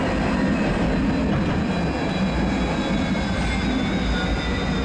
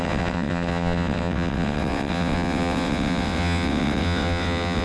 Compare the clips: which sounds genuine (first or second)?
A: first